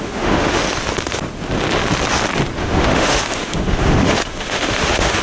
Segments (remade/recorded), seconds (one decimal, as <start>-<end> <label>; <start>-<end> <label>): 0.0-0.6 remade; 0.6-2.6 recorded; 2.6-5.2 remade